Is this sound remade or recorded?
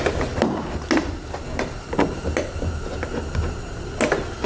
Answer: recorded